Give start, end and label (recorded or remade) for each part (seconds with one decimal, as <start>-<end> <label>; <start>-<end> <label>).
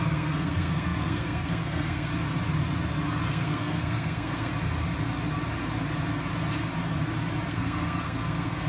0.0-2.1 remade; 2.1-3.3 recorded; 3.3-4.5 remade; 4.5-7.5 recorded; 7.5-8.7 remade